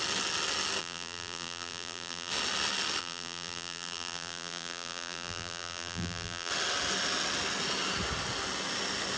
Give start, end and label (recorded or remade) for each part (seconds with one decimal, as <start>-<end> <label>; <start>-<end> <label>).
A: 0.0-0.8 recorded; 0.8-2.3 remade; 2.3-3.0 recorded; 3.0-6.5 remade; 6.5-9.2 recorded